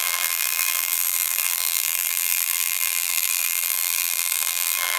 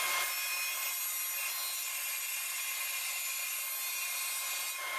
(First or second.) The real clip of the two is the second